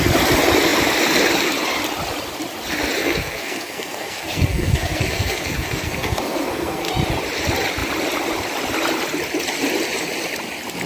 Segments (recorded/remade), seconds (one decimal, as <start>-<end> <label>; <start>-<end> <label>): 0.0-3.0 recorded; 3.0-6.9 remade; 6.9-10.9 recorded